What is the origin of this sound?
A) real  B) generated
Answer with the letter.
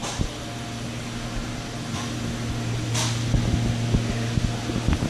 A